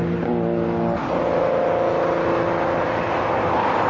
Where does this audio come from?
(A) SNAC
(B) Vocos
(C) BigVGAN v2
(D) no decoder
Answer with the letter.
D